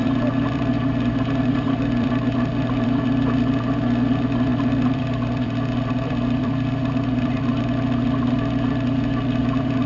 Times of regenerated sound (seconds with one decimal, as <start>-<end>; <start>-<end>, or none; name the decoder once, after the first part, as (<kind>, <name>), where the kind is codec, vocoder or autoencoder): 0.0-9.9 (vocoder, BigVGAN v2)